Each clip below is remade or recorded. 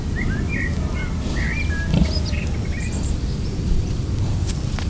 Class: recorded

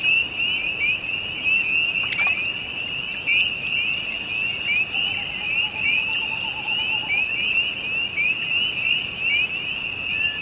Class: recorded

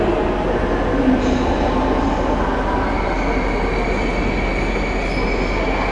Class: recorded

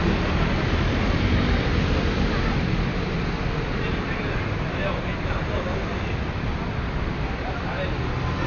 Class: recorded